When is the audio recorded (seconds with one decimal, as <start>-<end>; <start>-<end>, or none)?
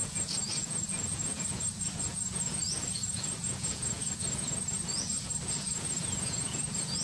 none